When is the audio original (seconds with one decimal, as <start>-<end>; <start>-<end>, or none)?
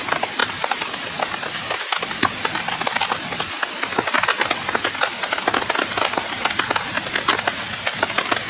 0.0-8.5